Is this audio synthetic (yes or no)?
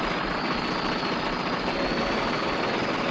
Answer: no